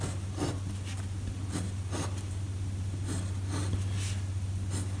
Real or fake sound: real